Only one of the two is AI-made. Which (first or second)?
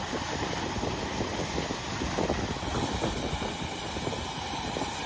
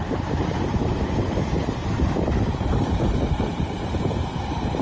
second